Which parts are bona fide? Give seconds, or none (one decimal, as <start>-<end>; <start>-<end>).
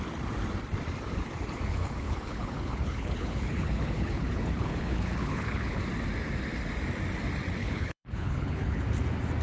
0.0-1.7; 5.8-7.6; 8.8-9.4